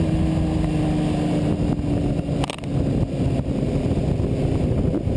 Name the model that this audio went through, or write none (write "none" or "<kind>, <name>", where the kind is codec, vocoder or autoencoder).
none